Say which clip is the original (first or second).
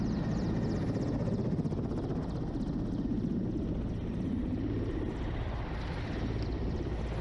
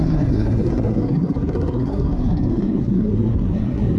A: first